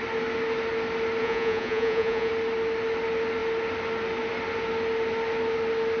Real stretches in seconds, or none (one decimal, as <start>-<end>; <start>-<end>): 0.0-1.2; 2.3-6.0